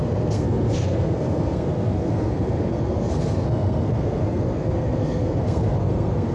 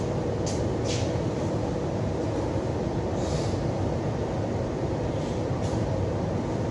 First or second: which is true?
second